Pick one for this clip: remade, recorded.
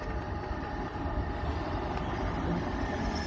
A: recorded